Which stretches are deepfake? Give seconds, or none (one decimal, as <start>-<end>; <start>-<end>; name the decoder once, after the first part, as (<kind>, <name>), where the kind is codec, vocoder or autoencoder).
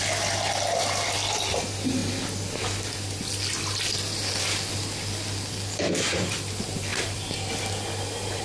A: 6.9-7.5 (vocoder, BigVGAN v2)